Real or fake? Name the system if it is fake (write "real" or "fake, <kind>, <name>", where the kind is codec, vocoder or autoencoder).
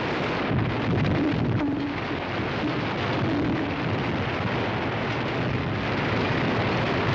real